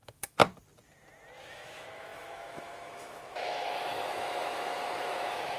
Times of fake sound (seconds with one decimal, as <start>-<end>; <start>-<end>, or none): 0.0-0.4; 1.5-5.6